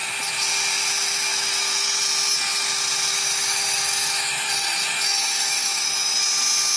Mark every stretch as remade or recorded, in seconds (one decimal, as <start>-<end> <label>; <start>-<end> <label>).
0.0-1.3 recorded; 1.3-2.0 remade; 2.0-3.1 recorded; 3.1-6.2 remade; 6.2-6.8 recorded